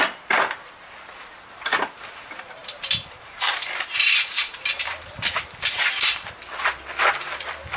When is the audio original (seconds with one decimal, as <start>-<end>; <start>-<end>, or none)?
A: 0.0-2.6; 6.1-7.8